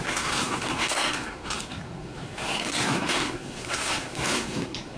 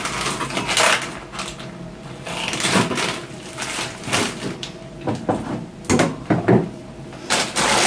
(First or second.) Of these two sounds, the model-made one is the first